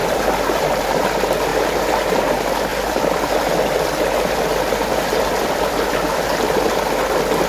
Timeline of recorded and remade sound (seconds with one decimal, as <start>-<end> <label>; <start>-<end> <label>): 0.0-0.8 remade; 0.8-1.5 recorded; 1.5-2.2 remade; 2.2-2.7 recorded; 2.7-6.9 remade; 6.9-7.5 recorded